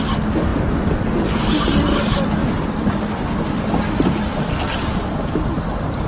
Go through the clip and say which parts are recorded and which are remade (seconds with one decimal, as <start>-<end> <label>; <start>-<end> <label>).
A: 0.0-6.1 recorded